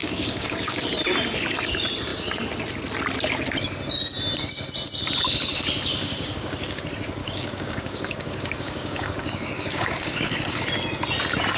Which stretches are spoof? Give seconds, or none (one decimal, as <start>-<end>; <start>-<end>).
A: 0.0-0.9; 6.0-6.8; 7.2-10.6